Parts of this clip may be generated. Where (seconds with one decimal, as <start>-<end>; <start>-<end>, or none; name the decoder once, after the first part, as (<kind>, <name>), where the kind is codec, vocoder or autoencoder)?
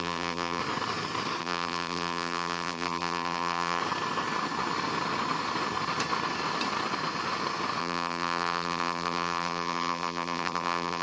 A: 0.0-0.6 (vocoder, BigVGAN v2); 1.4-3.8; 7.8-11.0